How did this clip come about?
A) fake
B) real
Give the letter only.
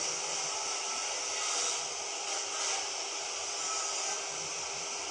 B